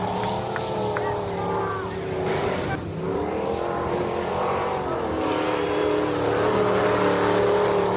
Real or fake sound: real